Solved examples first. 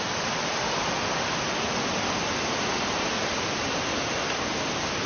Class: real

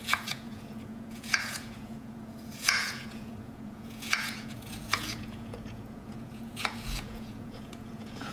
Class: fake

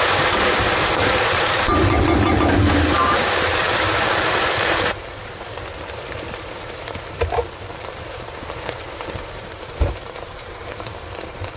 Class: fake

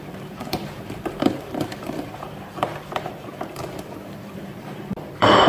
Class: fake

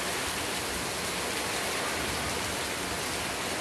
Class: real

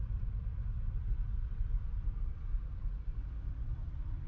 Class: fake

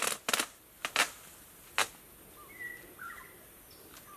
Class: real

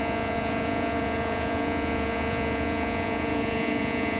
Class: fake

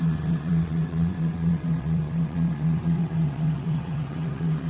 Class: fake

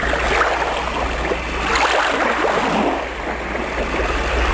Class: real